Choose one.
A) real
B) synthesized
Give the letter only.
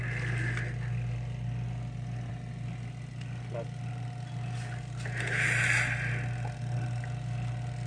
A